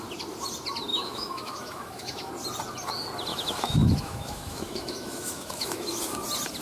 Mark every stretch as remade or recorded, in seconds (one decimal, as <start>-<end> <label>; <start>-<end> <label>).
0.0-0.9 recorded; 0.9-2.3 remade; 2.3-3.3 recorded; 3.3-6.0 remade; 6.0-6.6 recorded